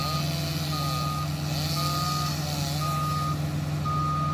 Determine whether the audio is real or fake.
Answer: real